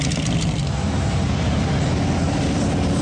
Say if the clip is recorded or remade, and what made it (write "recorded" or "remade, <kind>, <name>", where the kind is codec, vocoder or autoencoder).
recorded